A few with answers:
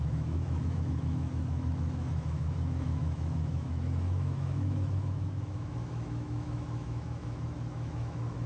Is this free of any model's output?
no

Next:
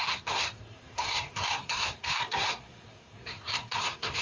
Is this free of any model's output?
no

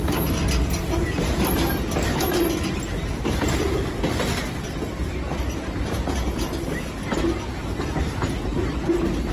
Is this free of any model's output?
yes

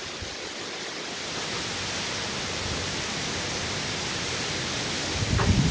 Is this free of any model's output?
no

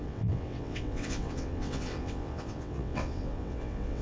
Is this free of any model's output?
no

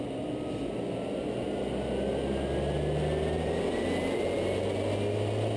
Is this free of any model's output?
yes